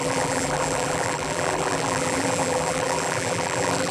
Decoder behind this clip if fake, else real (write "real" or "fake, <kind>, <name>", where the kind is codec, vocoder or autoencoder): fake, vocoder, BigVGAN v2